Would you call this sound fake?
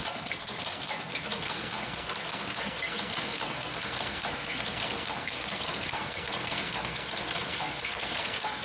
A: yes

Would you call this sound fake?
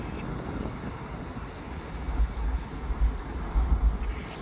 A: no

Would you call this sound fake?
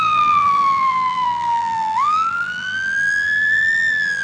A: yes